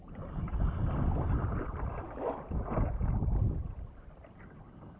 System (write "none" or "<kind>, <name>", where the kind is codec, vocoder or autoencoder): none